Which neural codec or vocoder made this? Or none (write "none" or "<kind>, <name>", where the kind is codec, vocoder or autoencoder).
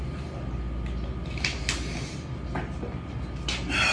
none